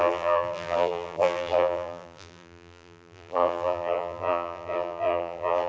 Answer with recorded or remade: remade